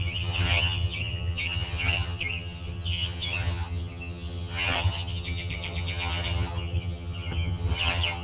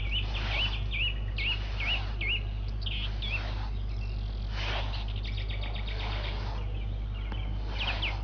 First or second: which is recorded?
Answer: second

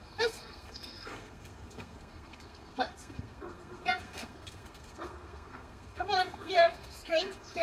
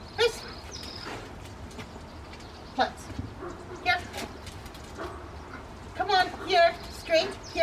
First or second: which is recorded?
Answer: second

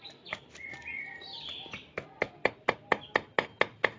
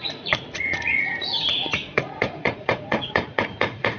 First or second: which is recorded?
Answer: first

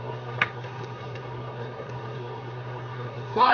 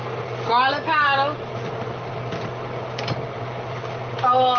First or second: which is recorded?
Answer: second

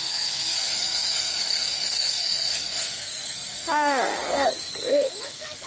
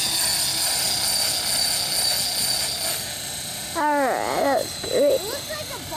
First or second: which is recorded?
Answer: second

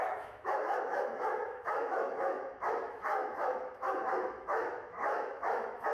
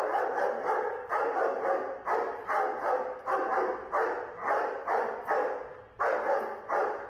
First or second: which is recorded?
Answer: second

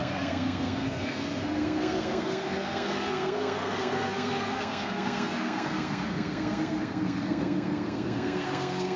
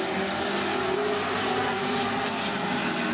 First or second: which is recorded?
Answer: second